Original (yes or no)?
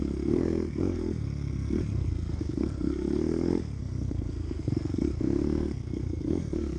no